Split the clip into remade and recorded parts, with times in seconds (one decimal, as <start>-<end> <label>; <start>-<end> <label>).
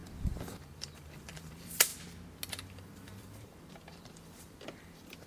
0.0-1.9 remade; 1.9-2.5 recorded; 2.5-5.3 remade